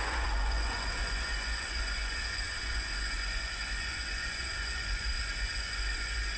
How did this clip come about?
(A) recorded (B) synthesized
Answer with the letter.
B